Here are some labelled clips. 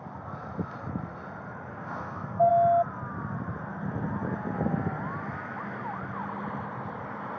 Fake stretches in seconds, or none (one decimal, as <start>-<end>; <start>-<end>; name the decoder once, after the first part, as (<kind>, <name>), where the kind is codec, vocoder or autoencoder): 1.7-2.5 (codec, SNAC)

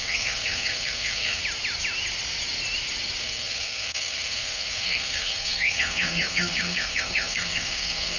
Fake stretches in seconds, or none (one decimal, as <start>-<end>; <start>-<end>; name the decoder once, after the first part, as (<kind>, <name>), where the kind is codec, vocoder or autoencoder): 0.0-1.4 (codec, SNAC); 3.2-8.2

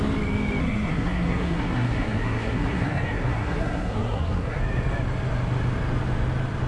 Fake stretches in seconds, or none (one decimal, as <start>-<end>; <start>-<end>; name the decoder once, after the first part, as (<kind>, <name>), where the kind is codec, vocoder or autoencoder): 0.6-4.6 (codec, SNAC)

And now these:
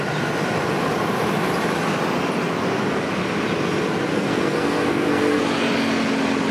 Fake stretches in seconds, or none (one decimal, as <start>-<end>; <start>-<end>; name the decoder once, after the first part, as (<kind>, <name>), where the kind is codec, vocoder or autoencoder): 4.1-5.4 (codec, SNAC)